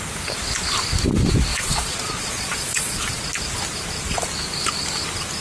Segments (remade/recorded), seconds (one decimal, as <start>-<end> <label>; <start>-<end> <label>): 0.0-1.5 recorded; 1.5-3.2 remade; 3.2-5.4 recorded